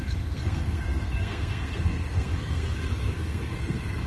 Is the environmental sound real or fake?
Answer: fake